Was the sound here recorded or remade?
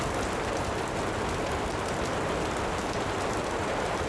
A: recorded